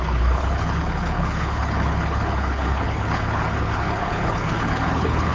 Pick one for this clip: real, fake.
fake